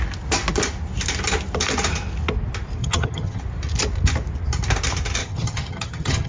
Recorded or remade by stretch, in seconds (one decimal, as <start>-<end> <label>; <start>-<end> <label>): 0.0-2.8 recorded; 2.8-3.4 remade; 3.4-5.2 recorded; 5.2-6.3 remade